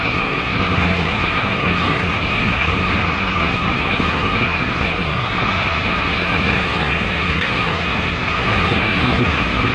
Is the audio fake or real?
fake